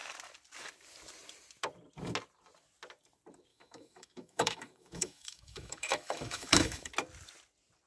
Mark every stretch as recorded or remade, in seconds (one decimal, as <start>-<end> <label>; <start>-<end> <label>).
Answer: 0.0-3.5 recorded; 3.5-6.9 remade; 6.9-7.9 recorded